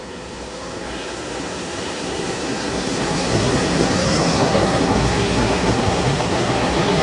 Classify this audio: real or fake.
fake